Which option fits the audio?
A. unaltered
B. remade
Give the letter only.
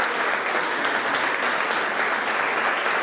A